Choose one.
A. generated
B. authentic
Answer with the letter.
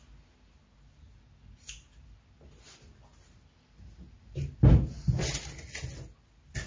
B